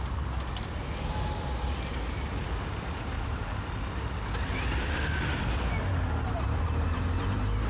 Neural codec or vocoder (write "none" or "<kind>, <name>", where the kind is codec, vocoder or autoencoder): none